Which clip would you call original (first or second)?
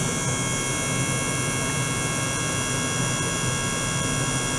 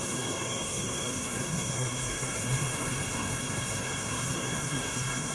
first